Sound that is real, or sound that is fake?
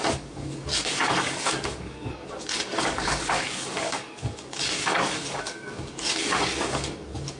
fake